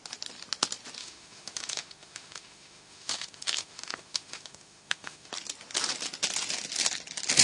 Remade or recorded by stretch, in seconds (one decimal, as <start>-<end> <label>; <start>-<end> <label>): 0.0-1.0 recorded; 1.0-5.3 remade; 5.3-7.4 recorded